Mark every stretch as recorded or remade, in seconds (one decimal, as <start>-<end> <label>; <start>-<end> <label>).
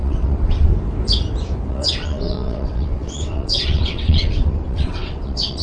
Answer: 0.0-0.7 remade; 0.7-1.7 recorded; 1.7-5.6 remade